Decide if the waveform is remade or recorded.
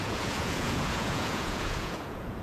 remade